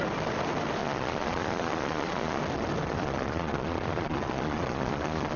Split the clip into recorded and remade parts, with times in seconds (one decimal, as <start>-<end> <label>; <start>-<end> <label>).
0.0-0.8 recorded; 0.8-2.4 remade; 2.4-2.9 recorded; 2.9-5.4 remade